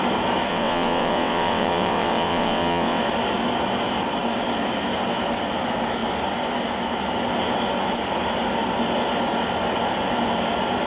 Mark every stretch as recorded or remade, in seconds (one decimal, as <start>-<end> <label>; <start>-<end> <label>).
0.0-0.5 recorded; 0.5-3.0 remade; 3.0-10.9 recorded